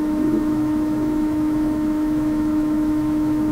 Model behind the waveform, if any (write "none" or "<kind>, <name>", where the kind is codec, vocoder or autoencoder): autoencoder, DAC-VAE